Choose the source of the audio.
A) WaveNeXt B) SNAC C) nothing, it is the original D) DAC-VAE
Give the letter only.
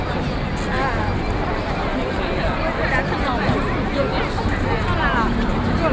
C